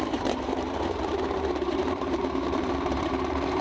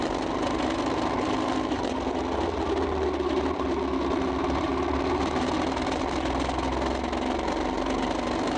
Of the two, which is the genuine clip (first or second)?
second